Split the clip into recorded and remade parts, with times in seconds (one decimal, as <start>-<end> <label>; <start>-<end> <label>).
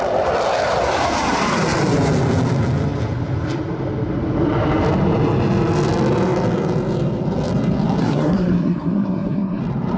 0.0-8.0 recorded; 8.0-9.6 remade; 9.6-10.0 recorded